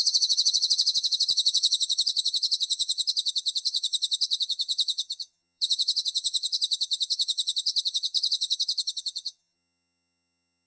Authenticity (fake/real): fake